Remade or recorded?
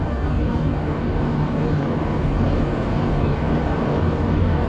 remade